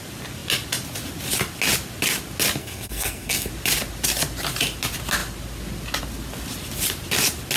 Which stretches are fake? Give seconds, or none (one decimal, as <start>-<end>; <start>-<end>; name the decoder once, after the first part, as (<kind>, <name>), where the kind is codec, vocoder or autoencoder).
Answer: 2.6-3.5 (codec, SNAC)